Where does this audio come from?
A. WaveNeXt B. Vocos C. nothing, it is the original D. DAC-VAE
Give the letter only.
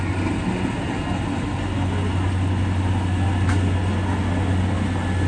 C